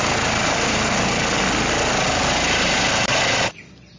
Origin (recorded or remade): recorded